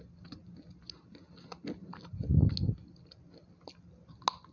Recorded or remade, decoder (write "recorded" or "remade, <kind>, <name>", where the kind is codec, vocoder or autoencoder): recorded